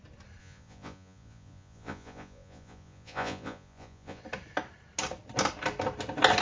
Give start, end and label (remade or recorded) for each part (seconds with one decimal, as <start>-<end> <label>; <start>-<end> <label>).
0.0-0.4 recorded; 0.4-4.2 remade; 4.2-6.4 recorded